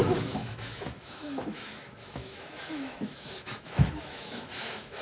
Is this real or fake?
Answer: fake